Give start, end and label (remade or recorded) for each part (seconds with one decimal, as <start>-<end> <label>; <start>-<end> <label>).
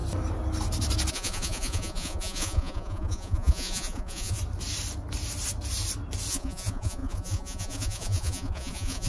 0.0-1.1 recorded; 1.1-4.4 remade; 4.4-6.3 recorded; 6.3-9.1 remade